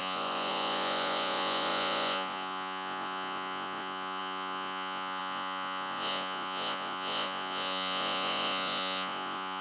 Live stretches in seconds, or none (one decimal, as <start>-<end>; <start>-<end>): none